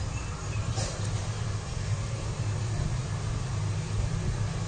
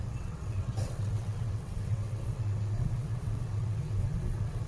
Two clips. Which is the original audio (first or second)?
first